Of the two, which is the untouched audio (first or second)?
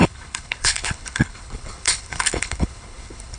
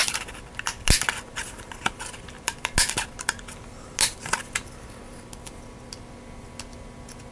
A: second